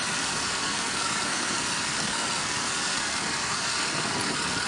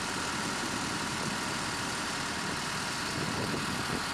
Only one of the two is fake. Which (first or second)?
first